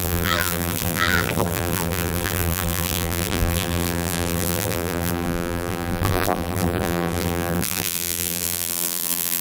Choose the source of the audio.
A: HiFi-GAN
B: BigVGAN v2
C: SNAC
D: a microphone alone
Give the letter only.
B